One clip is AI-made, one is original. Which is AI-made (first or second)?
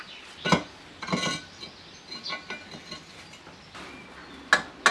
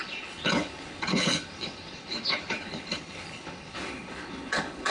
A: second